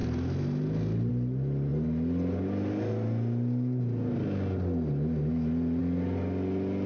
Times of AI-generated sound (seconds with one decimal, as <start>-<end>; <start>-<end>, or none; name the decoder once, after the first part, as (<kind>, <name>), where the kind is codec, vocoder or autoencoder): none